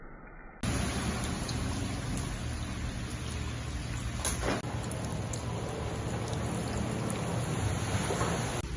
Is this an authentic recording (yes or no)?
yes